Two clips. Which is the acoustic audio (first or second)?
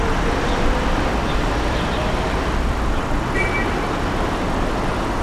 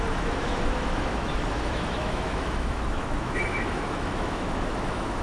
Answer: first